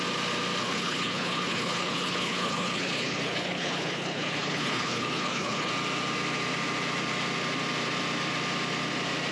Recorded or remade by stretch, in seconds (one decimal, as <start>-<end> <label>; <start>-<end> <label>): 0.0-0.6 recorded; 0.6-5.7 remade; 5.7-9.3 recorded